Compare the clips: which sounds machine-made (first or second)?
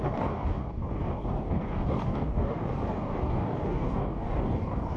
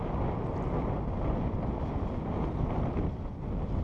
first